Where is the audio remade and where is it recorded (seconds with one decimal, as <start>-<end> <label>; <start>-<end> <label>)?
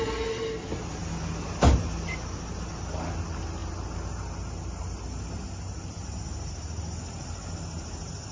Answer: 0.0-8.3 recorded